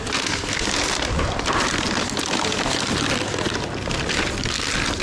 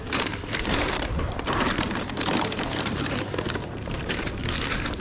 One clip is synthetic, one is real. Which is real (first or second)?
first